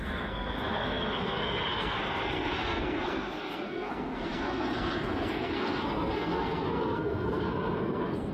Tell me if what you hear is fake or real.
fake